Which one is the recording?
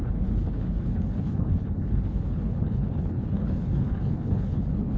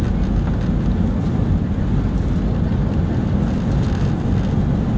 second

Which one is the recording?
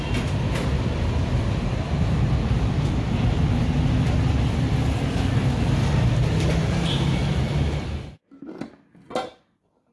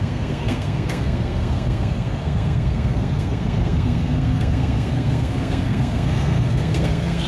first